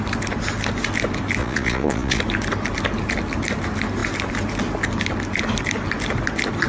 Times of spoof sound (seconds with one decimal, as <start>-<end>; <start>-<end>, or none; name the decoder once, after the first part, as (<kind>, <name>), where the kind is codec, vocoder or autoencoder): 1.4-2.2 (vocoder, Vocos)